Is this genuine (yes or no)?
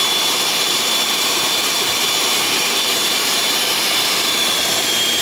no